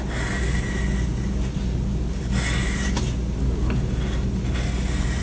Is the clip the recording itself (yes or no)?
yes